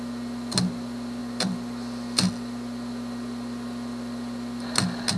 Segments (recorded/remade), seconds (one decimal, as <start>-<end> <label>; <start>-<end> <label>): 0.0-5.2 recorded

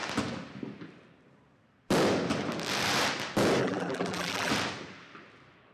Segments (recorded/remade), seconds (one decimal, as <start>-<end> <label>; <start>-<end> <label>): 0.0-3.6 recorded; 3.6-4.5 remade; 4.5-5.7 recorded